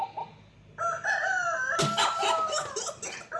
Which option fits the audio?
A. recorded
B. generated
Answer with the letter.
A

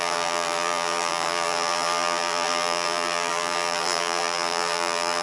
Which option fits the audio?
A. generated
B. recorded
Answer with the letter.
A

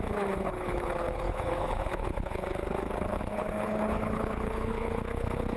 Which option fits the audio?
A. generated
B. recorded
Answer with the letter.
A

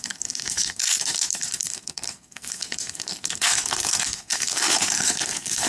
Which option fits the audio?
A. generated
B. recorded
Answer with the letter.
A